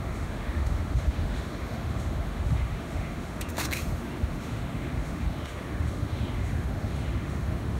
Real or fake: fake